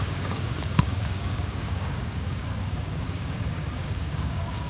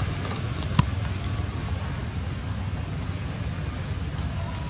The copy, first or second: first